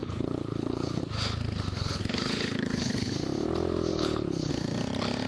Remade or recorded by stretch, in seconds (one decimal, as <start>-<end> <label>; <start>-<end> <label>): 0.0-1.0 remade; 1.0-1.8 recorded; 1.8-3.1 remade; 3.1-3.9 recorded; 3.9-4.5 remade; 4.5-5.3 recorded